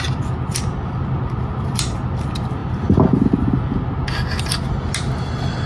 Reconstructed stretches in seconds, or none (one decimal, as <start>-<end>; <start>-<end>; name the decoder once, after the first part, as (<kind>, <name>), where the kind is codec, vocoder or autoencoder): none